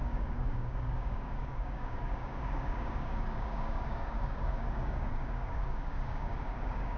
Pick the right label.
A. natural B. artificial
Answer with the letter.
B